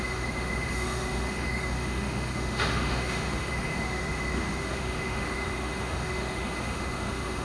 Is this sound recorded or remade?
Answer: remade